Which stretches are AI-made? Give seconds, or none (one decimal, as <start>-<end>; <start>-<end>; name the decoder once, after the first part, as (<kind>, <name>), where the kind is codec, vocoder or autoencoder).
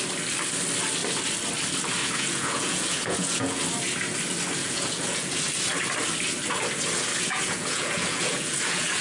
2.0-3.6 (vocoder, Vocos); 4.6-5.4; 7.1-9.0